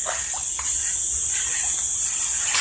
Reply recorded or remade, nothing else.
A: recorded